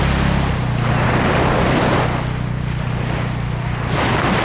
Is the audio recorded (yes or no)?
yes